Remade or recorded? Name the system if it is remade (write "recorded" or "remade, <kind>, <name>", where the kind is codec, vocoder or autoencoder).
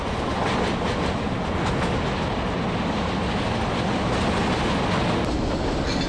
recorded